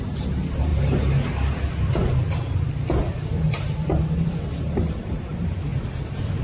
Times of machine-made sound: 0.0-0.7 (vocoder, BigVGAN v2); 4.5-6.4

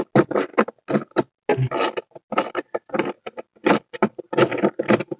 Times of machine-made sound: none